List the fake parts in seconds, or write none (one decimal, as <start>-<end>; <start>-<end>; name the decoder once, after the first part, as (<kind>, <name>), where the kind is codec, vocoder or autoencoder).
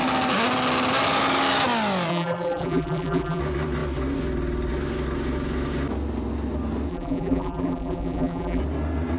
2.1-3.4 (vocoder, BigVGAN v2); 6.9-8.6